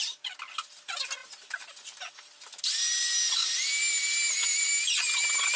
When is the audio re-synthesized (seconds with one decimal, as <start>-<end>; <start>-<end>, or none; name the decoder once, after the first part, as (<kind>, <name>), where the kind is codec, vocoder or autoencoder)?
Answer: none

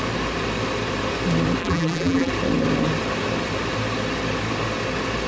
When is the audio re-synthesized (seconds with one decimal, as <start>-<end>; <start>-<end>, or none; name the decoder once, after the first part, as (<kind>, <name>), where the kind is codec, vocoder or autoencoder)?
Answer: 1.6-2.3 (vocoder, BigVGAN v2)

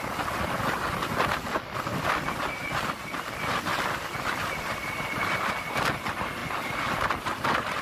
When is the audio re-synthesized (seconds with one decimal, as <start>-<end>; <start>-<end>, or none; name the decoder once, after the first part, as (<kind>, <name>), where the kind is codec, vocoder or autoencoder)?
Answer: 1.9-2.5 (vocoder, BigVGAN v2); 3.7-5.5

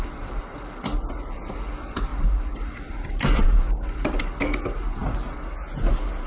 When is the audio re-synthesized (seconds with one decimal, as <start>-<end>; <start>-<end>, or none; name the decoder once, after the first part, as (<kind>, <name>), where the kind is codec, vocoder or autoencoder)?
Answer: 2.1-4.2 (vocoder, BigVGAN v2)